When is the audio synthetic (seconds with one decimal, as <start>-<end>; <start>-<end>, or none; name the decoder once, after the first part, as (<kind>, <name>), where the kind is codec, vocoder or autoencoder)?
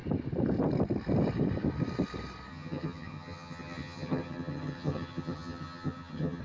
2.5-6.4 (vocoder, HiFi-GAN)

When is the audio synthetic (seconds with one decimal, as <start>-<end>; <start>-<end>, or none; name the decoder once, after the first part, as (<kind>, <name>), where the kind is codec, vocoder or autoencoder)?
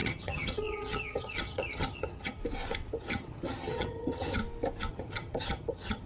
0.0-2.4 (vocoder, HiFi-GAN); 2.9-4.4; 4.9-6.1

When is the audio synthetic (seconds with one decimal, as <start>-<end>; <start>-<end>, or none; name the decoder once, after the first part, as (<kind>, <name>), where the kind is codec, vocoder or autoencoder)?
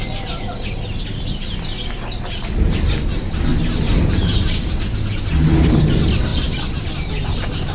none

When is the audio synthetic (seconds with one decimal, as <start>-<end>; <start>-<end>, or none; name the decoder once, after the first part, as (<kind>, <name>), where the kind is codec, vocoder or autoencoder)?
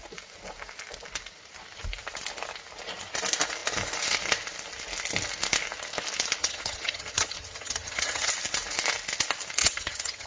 6.4-8.3 (vocoder, HiFi-GAN); 9.6-10.3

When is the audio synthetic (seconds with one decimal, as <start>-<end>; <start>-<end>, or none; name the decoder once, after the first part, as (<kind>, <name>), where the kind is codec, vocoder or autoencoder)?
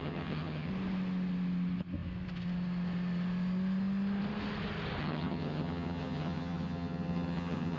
0.0-0.7 (vocoder, HiFi-GAN); 5.0-7.8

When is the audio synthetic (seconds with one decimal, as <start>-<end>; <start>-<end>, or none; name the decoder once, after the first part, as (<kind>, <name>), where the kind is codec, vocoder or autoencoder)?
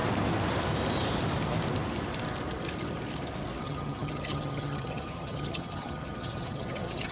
3.6-7.1 (vocoder, HiFi-GAN)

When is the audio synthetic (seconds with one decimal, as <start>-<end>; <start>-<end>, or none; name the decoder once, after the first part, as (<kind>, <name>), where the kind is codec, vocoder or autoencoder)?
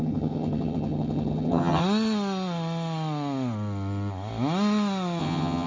0.0-1.8 (vocoder, HiFi-GAN); 5.2-5.7